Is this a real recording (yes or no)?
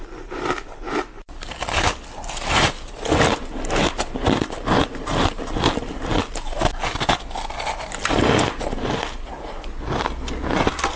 yes